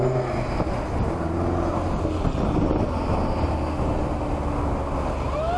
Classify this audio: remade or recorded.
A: recorded